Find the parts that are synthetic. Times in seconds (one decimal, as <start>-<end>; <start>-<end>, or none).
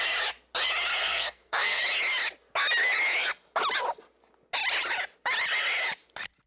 1.0-1.8